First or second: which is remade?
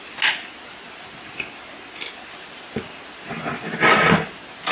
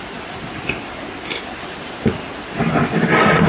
second